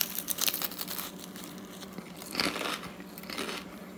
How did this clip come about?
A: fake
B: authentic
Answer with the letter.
A